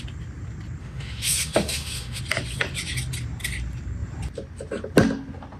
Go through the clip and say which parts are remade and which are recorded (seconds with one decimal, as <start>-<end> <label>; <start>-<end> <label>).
0.0-0.8 recorded; 0.8-2.2 remade; 2.2-5.6 recorded